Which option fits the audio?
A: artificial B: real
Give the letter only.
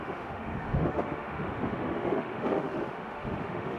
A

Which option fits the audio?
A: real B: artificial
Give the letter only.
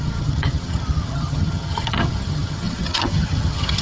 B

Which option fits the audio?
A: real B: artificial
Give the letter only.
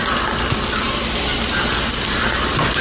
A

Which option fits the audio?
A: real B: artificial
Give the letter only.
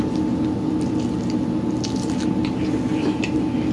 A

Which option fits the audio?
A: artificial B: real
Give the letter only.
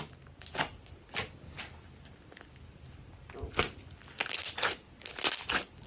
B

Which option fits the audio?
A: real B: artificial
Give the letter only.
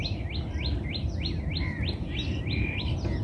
A